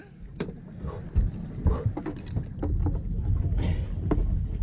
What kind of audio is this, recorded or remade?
recorded